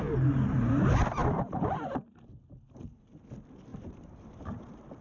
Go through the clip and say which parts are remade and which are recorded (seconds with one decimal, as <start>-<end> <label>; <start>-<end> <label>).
0.0-1.2 recorded; 1.2-2.3 remade; 2.3-3.7 recorded; 3.7-4.6 remade; 4.6-5.0 recorded

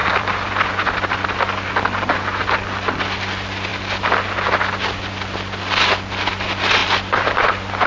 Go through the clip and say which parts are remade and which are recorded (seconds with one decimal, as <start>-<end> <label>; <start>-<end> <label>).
0.0-1.7 remade; 1.7-6.8 recorded; 6.8-7.9 remade

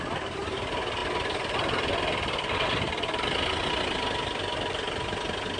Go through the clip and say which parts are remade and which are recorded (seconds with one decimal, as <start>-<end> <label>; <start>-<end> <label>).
0.0-5.6 recorded